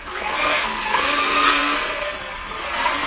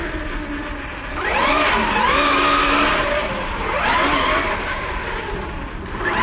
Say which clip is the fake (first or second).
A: first